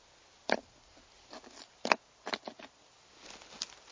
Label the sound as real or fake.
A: real